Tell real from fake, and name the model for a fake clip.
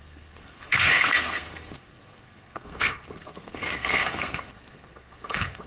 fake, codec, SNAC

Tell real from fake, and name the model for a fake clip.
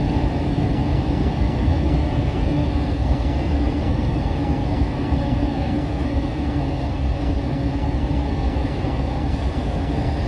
fake, codec, SNAC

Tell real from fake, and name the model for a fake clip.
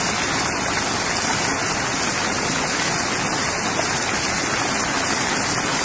real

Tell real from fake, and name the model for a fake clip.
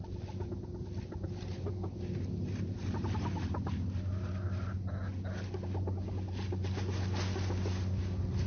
real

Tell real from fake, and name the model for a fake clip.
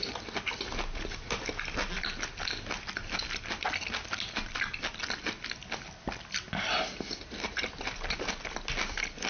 real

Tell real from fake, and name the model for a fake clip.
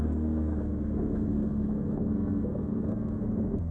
fake, codec, SNAC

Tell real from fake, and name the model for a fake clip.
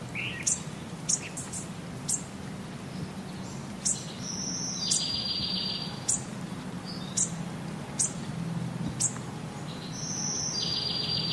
real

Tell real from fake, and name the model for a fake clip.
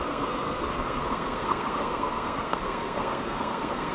fake, codec, SNAC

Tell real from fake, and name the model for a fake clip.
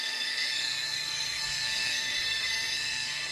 fake, codec, SNAC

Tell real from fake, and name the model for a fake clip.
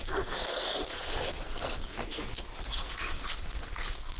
fake, codec, SNAC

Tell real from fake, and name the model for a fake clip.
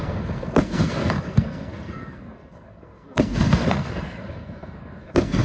fake, codec, SNAC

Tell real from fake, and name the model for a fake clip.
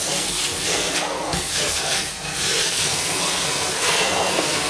fake, codec, SNAC